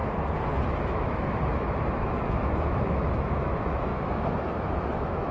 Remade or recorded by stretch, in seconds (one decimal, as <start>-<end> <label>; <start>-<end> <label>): 0.0-5.3 remade